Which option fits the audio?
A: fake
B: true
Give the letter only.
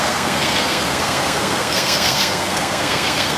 A